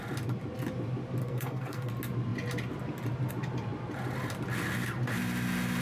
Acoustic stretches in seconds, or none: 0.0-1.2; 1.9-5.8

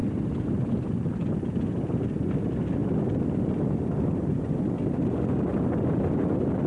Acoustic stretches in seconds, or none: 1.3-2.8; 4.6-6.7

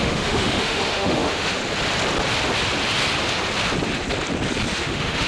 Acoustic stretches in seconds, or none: 1.6-4.8